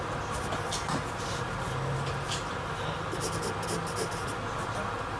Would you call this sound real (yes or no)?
yes